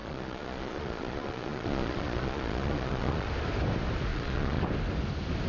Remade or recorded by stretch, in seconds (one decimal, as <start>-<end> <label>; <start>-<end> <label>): 0.0-3.3 remade; 3.3-4.1 recorded; 4.1-4.6 remade; 4.6-5.5 recorded